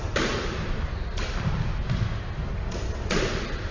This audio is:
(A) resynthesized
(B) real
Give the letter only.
B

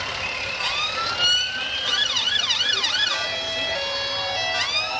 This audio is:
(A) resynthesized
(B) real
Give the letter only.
B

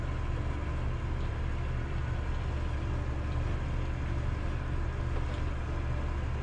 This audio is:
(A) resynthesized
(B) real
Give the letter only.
B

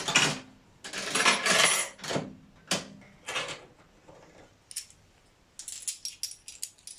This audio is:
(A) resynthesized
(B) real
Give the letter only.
B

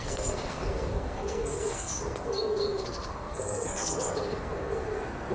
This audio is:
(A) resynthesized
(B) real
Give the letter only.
A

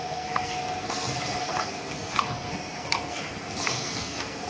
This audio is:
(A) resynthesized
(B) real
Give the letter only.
A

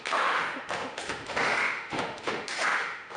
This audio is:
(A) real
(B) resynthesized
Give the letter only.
B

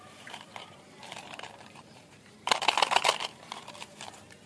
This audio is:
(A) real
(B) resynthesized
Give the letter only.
B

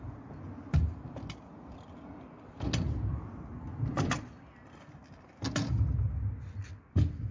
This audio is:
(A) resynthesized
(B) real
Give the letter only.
B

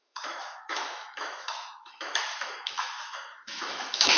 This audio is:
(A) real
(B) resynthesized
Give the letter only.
B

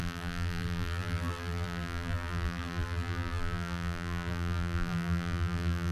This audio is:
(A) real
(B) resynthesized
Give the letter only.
B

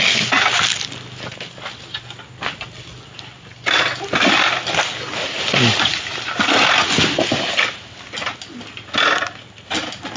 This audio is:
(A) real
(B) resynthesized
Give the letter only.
A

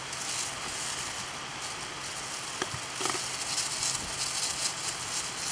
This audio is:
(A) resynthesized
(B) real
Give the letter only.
B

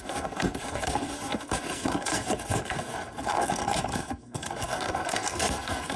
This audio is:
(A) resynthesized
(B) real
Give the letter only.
A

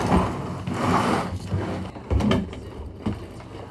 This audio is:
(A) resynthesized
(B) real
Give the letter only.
B